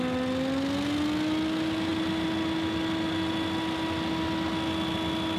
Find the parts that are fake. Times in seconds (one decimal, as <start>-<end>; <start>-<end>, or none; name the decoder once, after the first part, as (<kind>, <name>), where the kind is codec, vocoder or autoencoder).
none